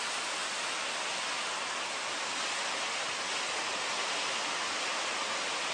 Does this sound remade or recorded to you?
recorded